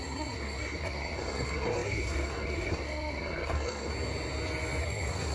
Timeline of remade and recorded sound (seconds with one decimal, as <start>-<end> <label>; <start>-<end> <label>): 0.0-3.9 remade; 3.9-4.8 recorded; 4.8-5.3 remade